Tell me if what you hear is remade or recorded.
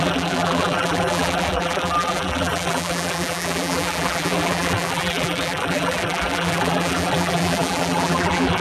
remade